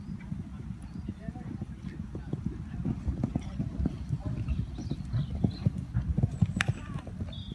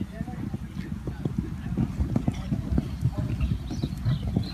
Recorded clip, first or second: second